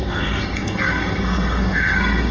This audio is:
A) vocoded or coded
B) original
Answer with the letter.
A